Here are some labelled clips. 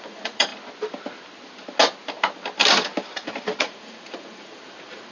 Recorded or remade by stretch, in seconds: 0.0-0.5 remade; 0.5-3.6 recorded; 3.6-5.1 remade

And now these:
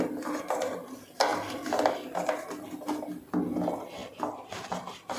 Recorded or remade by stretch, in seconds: 0.0-5.2 recorded